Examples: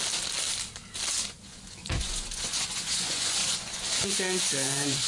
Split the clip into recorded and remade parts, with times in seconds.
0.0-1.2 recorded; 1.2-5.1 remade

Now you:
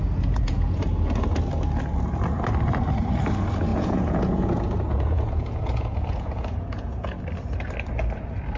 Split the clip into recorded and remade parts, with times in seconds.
0.0-0.8 remade; 0.8-3.7 recorded; 3.7-7.2 remade; 7.2-8.6 recorded

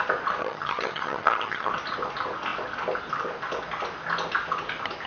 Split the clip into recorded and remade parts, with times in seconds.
0.0-0.4 recorded; 0.4-1.7 remade; 1.7-5.1 recorded

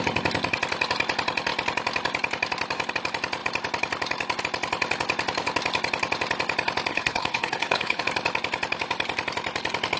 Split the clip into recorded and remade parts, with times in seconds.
0.0-6.9 recorded; 6.9-8.0 remade; 8.0-10.0 recorded

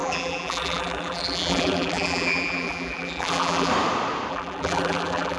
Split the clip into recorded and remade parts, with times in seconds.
0.0-3.7 remade; 3.7-4.3 recorded; 4.3-5.4 remade

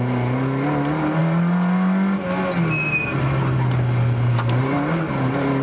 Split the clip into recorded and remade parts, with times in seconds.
0.0-5.6 recorded

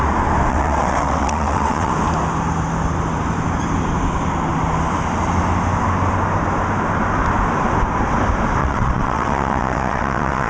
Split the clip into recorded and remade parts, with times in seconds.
0.0-0.5 recorded; 0.5-1.9 remade; 1.9-8.6 recorded; 8.6-10.5 remade